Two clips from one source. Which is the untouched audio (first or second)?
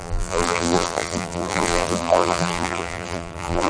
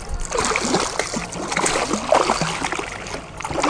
second